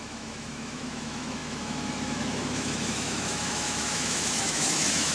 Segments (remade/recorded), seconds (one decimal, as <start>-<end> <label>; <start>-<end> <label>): 0.0-5.1 remade